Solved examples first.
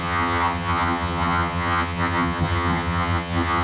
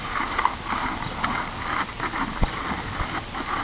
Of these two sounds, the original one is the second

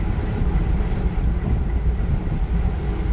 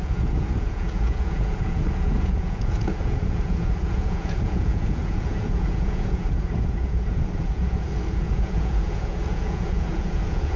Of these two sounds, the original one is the first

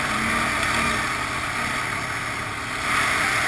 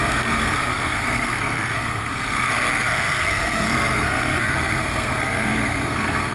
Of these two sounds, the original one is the first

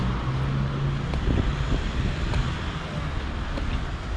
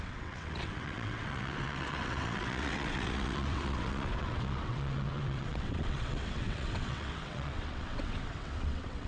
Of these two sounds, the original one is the first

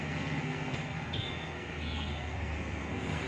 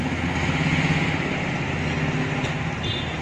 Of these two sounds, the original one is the second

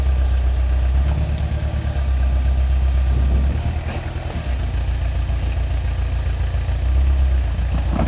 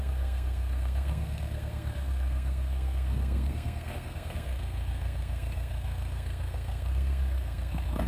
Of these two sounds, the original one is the first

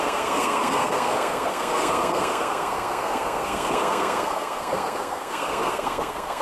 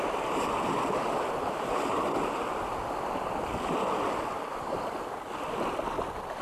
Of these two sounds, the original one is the second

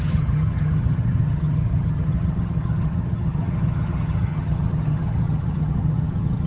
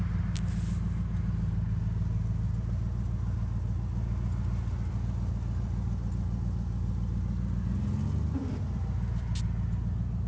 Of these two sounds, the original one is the second